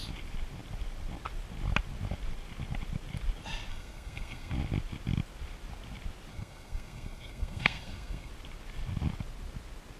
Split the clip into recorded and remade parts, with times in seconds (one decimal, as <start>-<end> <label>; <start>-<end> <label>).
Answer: 0.0-3.7 recorded; 3.7-4.5 remade; 4.5-6.3 recorded; 6.3-8.3 remade; 8.3-10.0 recorded